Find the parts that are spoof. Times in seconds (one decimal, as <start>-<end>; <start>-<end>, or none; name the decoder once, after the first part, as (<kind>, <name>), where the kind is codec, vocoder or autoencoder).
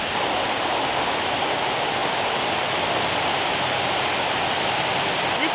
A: none